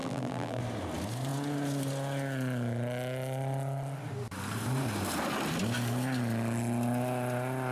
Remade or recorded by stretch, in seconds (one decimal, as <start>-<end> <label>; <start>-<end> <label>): 0.0-0.6 remade; 0.6-7.7 recorded